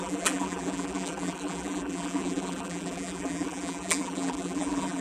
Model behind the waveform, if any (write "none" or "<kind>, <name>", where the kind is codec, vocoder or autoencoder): vocoder, BigVGAN v2